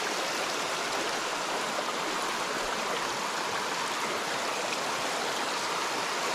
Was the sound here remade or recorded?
recorded